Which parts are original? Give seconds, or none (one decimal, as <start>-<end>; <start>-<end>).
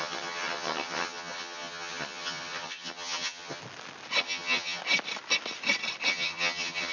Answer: 3.6-4.2; 4.8-6.1